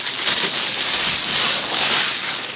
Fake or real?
fake